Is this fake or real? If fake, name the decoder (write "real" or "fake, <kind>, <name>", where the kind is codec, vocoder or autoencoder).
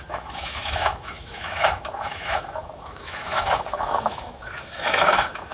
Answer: fake, autoencoder, DAC-VAE